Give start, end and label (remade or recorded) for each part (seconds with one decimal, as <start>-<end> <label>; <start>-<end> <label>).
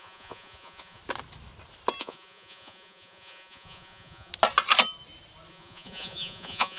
0.0-1.0 remade; 1.0-2.0 recorded; 2.0-4.3 remade; 4.3-5.5 recorded; 5.5-6.8 remade